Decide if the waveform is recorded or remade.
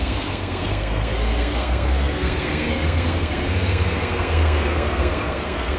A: remade